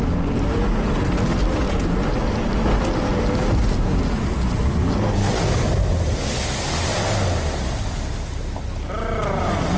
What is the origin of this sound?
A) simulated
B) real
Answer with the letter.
B